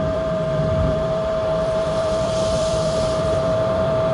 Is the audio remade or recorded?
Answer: remade